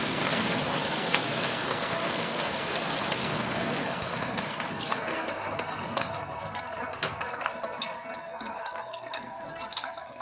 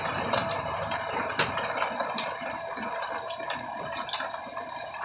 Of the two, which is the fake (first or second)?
first